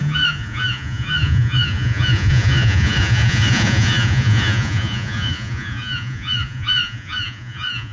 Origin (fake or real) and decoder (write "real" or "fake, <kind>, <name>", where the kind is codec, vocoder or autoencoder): fake, vocoder, Vocos